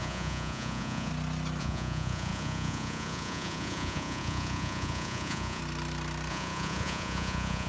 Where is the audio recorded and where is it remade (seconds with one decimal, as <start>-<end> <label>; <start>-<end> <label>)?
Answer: 0.0-1.1 remade; 1.1-1.6 recorded; 1.6-5.6 remade; 5.6-6.3 recorded; 6.3-7.7 remade